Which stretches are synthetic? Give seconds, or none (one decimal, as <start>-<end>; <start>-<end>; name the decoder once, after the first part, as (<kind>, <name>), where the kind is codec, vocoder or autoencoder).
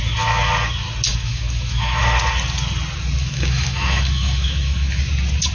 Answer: 1.1-2.0 (autoencoder, DAC-VAE); 3.2-5.0